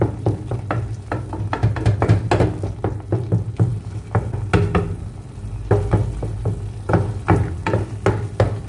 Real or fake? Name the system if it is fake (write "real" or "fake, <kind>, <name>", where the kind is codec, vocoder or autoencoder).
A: real